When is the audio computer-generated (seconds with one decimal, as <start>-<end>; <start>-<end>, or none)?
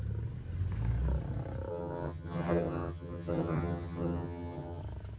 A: 1.7-4.8